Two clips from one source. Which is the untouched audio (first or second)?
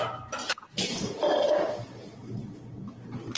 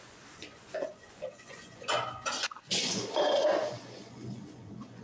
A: first